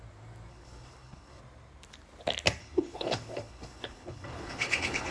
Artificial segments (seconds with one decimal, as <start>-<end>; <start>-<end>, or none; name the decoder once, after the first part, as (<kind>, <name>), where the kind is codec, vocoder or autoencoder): 0.5-1.4 (codec, HILCodec); 2.6-5.1